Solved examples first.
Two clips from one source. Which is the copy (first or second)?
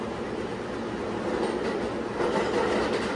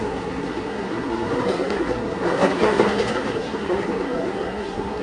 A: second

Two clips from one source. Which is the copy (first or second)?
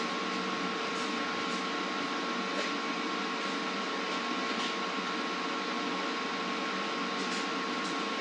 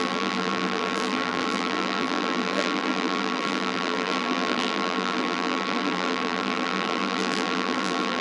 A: second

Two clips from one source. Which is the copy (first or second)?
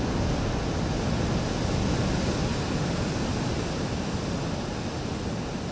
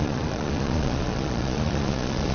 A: second